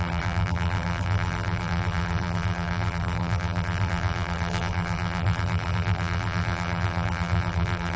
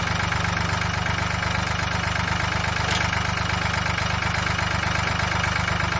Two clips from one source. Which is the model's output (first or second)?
first